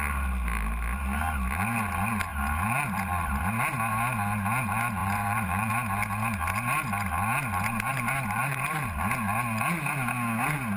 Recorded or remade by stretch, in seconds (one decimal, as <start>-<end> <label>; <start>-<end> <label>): 0.0-2.3 recorded; 2.3-3.4 remade; 3.4-5.0 recorded; 5.0-5.7 remade; 5.7-7.9 recorded; 7.9-8.9 remade; 8.9-10.8 recorded